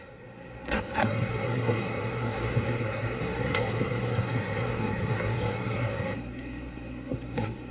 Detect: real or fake fake